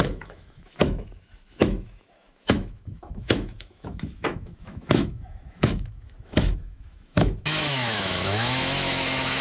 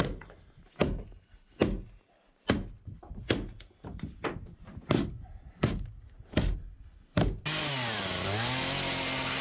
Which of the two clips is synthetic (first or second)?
first